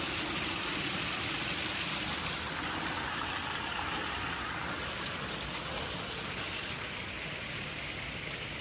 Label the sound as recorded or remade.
recorded